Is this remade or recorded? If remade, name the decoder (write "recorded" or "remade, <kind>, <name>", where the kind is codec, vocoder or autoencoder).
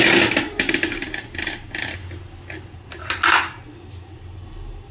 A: recorded